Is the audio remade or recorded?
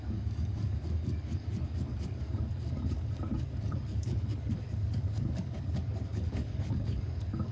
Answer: remade